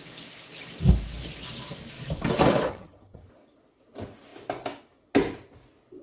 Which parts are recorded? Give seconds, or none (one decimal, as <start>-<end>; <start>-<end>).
0.0-2.7; 3.3-6.0